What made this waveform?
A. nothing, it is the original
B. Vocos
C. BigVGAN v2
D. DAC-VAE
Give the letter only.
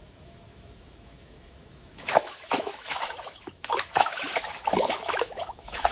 D